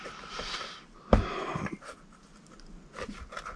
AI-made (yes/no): no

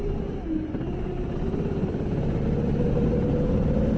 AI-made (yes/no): no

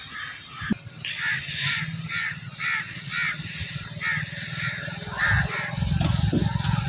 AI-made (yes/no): no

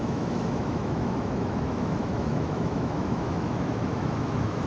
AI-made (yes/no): yes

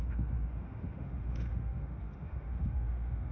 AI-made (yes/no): yes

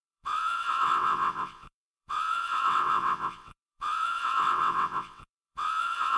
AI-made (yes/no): yes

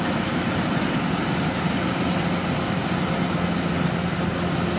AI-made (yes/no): no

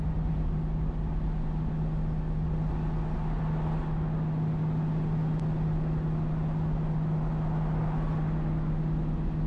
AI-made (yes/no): no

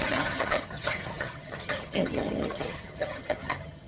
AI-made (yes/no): yes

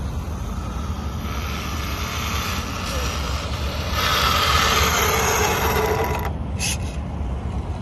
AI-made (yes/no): no